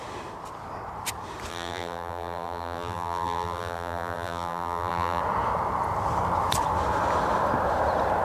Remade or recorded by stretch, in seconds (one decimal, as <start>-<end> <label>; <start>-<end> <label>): 0.0-1.5 recorded; 1.5-5.2 remade; 5.2-8.2 recorded